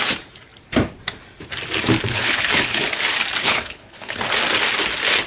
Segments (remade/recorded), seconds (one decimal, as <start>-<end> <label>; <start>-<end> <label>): 0.0-2.1 recorded; 2.1-2.9 remade; 2.9-3.4 recorded; 3.4-4.2 remade; 4.2-5.3 recorded